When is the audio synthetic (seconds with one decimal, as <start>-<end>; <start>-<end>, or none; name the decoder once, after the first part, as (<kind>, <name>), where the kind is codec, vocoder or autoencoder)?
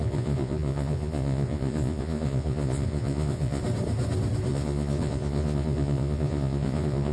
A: 0.0-3.6 (vocoder, Vocos); 4.5-7.1